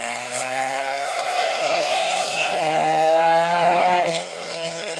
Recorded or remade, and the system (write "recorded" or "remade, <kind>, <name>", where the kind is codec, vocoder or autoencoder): remade, codec, SNAC